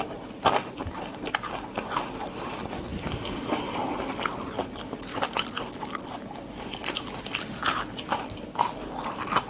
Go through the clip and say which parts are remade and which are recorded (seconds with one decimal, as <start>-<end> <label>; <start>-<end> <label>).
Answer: 0.0-9.5 recorded